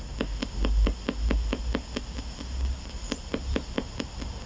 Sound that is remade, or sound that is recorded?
recorded